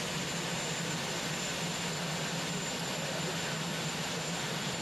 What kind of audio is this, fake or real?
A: real